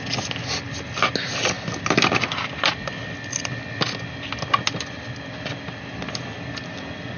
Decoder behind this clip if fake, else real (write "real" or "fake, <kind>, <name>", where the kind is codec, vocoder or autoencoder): real